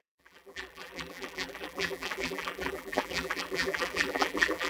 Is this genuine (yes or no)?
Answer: no